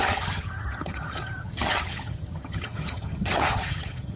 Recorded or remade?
remade